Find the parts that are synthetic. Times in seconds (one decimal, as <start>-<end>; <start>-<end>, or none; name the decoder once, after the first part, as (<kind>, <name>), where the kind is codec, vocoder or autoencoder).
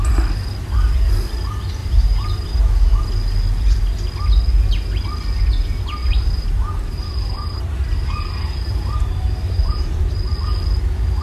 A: 1.8-3.0 (vocoder, BigVGAN v2); 6.0-10.0